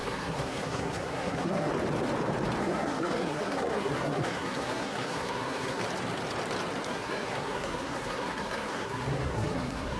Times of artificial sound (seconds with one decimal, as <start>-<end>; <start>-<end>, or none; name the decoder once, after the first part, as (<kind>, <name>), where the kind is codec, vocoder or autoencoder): 0.0-1.7 (codec, SNAC); 2.6-5.8; 6.9-10.0

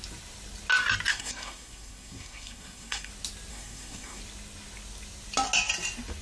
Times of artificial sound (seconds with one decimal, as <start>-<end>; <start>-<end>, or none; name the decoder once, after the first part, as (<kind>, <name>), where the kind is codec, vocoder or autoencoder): 1.1-3.1 (codec, SNAC); 3.5-4.2

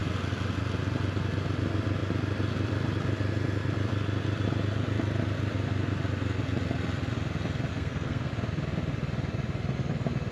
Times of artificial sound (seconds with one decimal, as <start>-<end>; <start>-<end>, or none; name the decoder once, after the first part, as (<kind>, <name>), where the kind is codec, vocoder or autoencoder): 7.7-8.3 (codec, SNAC)

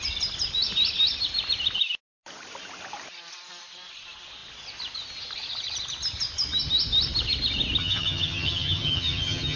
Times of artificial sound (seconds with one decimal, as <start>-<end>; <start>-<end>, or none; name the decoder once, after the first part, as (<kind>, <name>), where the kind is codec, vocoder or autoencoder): 7.8-9.6 (vocoder, HiFi-GAN)

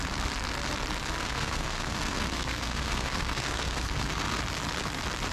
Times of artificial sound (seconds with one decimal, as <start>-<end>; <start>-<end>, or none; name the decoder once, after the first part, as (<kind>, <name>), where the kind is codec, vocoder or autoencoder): 1.2-4.4 (codec, SNAC)

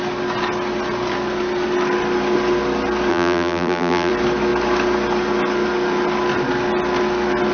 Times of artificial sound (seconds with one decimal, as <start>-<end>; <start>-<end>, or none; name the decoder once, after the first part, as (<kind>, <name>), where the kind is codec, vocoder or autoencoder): 3.1-4.1 (vocoder, BigVGAN v2)

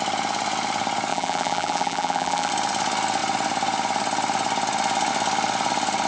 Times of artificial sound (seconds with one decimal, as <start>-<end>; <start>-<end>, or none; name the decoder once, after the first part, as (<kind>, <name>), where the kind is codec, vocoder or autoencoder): 1.1-2.5 (vocoder, BigVGAN v2)